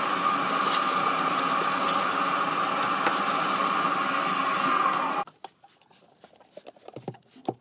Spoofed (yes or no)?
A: no